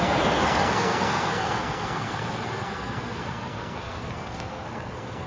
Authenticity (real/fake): fake